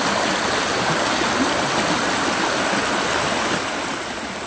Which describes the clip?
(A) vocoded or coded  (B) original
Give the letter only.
B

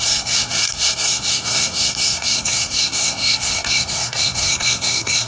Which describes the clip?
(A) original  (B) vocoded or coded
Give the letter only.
B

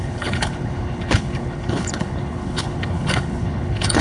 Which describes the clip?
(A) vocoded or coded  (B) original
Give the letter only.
A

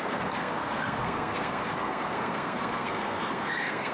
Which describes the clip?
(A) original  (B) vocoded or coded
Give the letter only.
B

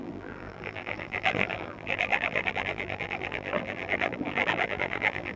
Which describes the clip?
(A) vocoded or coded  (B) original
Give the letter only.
A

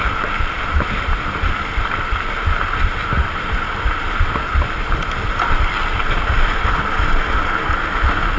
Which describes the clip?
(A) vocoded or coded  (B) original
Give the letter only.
B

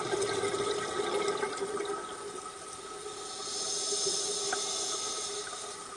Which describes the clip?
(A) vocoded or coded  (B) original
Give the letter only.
B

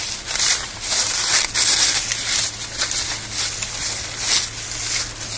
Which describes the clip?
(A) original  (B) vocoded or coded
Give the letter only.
A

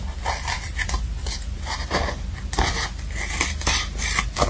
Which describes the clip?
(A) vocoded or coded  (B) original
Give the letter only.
A